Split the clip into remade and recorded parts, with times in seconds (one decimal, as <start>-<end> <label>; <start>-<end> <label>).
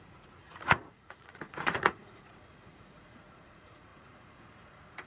0.0-5.1 remade